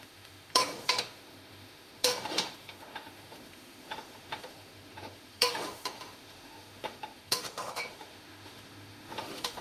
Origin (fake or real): fake